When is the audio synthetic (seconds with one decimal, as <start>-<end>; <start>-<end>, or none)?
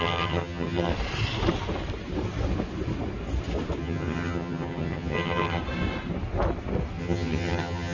0.0-0.9; 3.8-5.6; 7.0-7.9